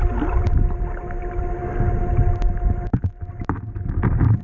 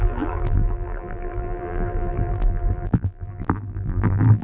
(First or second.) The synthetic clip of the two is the second